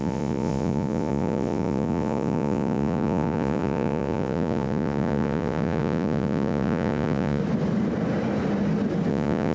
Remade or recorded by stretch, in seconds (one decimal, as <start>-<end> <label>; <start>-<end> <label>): 0.0-7.4 remade; 7.4-9.1 recorded; 9.1-9.5 remade